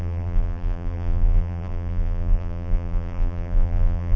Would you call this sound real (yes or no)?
no